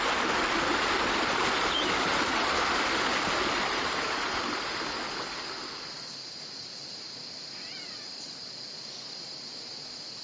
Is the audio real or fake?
real